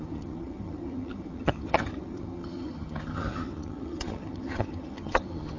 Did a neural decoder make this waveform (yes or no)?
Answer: yes